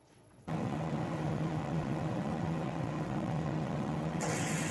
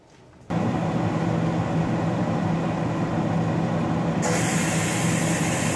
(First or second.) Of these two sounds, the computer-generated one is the first